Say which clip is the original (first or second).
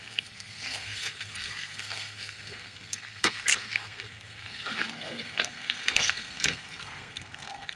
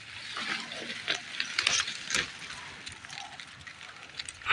second